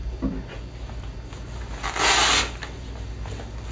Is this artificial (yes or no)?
no